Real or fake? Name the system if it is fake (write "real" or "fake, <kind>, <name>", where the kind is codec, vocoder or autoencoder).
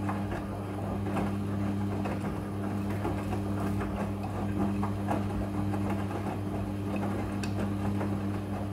real